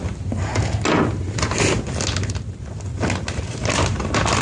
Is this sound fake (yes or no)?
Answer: no